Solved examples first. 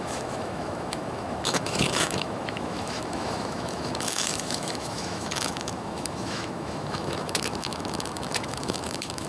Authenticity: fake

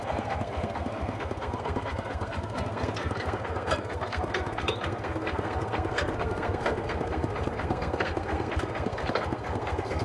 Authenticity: fake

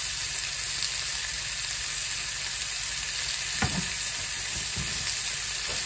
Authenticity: real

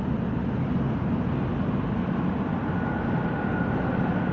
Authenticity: real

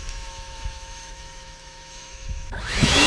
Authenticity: fake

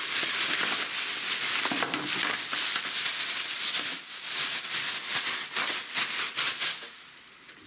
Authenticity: real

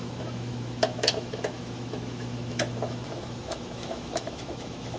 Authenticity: fake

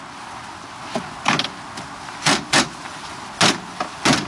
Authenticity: real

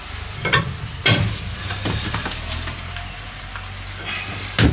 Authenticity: real